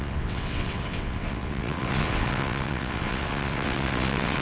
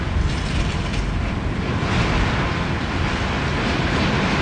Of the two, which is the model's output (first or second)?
first